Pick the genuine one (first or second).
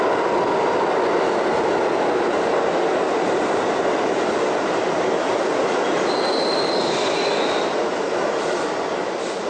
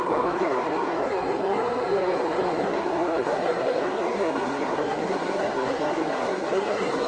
first